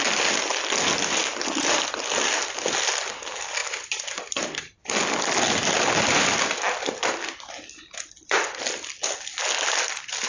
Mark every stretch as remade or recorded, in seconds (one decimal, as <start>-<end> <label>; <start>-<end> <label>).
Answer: 0.0-3.6 recorded; 3.6-5.0 remade; 5.0-10.3 recorded